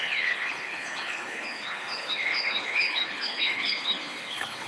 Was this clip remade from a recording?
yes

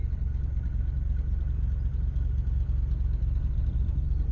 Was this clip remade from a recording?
no